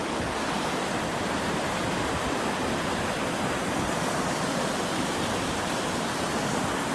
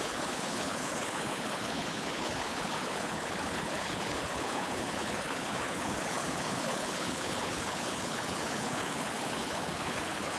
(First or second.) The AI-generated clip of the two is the second